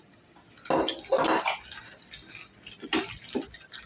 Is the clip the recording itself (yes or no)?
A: yes